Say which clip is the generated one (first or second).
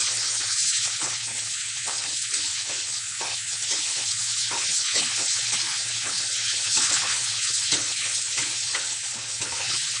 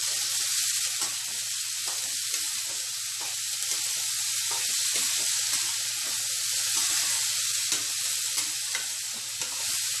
first